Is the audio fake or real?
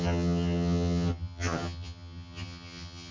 fake